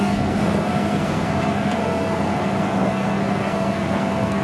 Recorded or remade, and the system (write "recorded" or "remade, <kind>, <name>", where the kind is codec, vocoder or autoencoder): remade, codec, SNAC